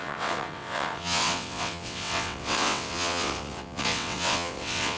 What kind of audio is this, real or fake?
fake